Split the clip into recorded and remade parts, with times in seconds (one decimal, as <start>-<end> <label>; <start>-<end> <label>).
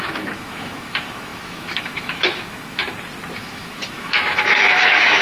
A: 0.0-2.8 remade; 2.8-3.4 recorded; 3.4-5.2 remade